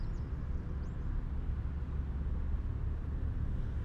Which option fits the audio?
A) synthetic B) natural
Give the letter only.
B